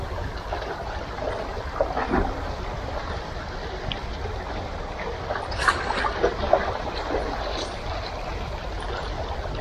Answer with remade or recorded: recorded